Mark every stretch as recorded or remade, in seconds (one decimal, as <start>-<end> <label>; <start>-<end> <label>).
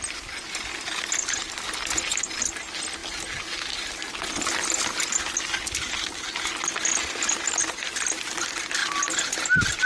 0.0-9.9 recorded